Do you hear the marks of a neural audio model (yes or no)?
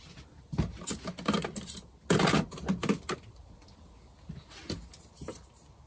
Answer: no